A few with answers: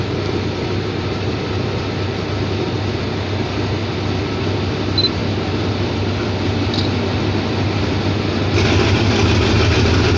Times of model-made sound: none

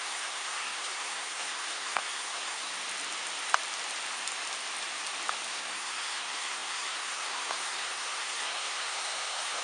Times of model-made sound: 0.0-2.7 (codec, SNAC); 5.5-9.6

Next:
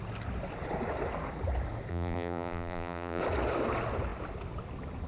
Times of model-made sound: 1.9-3.2 (vocoder, BigVGAN v2)

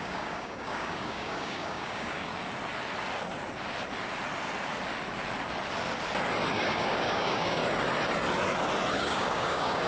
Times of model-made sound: 0.0-2.3 (codec, DAC); 6.5-7.6; 9.0-9.9